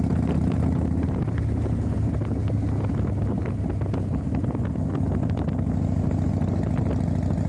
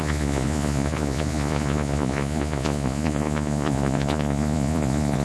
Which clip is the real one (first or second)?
first